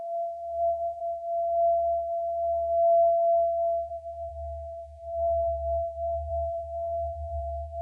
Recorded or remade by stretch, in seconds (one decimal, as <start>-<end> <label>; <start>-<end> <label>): 0.0-1.0 remade; 1.0-3.9 recorded; 3.9-7.8 remade